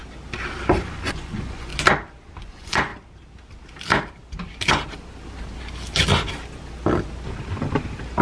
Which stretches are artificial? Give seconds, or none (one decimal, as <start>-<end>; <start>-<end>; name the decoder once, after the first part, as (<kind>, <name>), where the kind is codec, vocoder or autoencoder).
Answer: 0.7-1.7 (vocoder, Vocos); 2.4-2.9